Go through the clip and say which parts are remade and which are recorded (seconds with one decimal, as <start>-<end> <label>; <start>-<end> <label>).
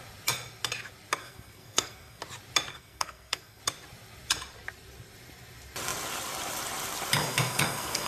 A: 0.0-1.2 recorded; 1.2-2.2 remade; 2.2-2.7 recorded; 2.7-3.6 remade; 3.6-7.2 recorded; 7.2-8.1 remade